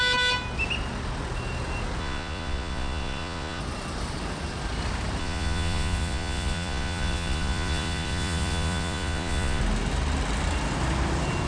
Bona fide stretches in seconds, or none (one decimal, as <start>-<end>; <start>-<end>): 0.0-2.0; 3.6-5.2; 9.6-11.5